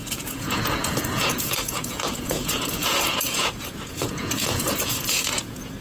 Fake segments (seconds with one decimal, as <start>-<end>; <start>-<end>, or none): 0.0-5.8